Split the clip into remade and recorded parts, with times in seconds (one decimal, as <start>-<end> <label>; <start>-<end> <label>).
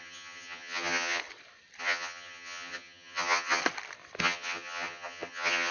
0.0-1.2 remade; 1.2-1.8 recorded; 1.8-3.6 remade; 3.6-4.2 recorded; 4.2-5.7 remade